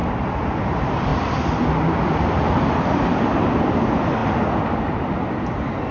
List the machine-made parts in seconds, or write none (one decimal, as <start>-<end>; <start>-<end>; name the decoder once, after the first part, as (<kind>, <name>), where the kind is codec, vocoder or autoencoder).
1.1-3.8 (vocoder, BigVGAN v2)